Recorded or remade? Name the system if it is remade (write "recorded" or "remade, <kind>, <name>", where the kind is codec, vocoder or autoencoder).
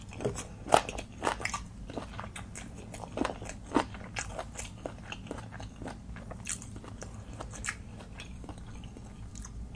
recorded